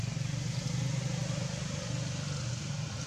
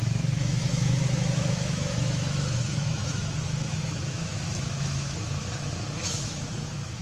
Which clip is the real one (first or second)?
first